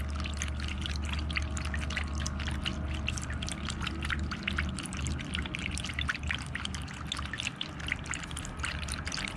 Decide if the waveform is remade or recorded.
recorded